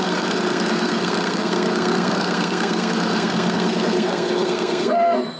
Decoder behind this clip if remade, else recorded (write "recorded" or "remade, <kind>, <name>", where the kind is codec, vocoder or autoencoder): remade, codec, SNAC